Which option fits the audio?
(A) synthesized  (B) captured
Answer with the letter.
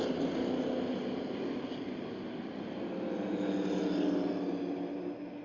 B